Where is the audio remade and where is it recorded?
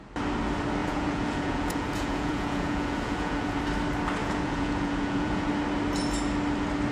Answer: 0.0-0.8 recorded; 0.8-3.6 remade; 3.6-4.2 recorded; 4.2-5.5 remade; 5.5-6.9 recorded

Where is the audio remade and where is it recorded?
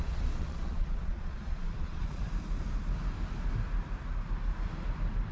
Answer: 0.0-2.2 remade; 2.2-5.3 recorded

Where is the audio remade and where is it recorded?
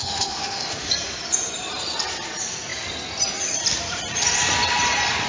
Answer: 0.0-0.9 remade; 0.9-5.3 recorded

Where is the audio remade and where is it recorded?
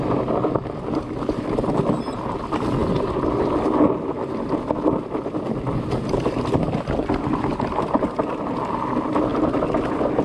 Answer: 0.0-10.2 recorded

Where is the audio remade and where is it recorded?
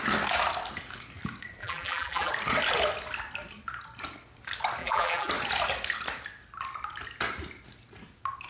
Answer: 0.0-1.6 recorded; 1.6-2.3 remade; 2.3-4.8 recorded; 4.8-5.3 remade; 5.3-8.5 recorded